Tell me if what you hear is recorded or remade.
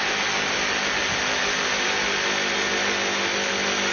recorded